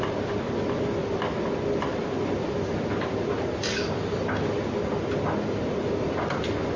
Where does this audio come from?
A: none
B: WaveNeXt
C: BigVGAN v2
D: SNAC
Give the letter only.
A